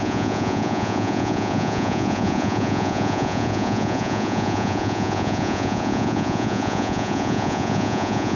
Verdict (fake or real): fake